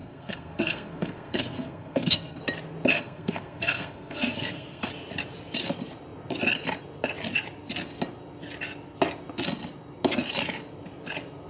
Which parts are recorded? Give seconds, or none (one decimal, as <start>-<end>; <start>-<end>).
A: 2.4-2.9; 4.9-11.5